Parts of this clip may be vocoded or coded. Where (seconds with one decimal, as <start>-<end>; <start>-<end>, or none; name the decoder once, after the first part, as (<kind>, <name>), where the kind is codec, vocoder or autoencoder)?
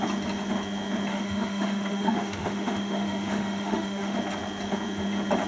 1.1-4.2 (autoencoder, DAC-VAE)